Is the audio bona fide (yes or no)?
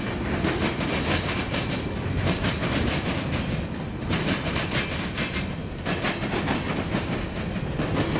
yes